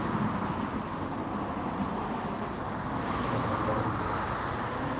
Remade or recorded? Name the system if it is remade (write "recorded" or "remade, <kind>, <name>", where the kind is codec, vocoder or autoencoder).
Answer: recorded